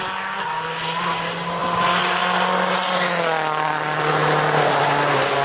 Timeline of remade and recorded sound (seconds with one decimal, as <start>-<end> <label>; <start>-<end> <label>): 0.0-5.4 recorded